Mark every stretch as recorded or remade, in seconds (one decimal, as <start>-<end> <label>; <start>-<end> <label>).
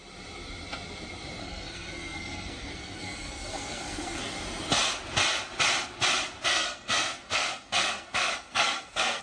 0.0-1.4 recorded; 1.4-4.2 remade; 4.2-6.5 recorded; 6.5-9.2 remade